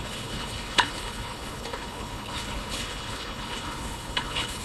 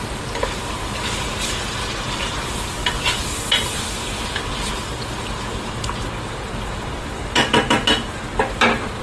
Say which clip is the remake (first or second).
first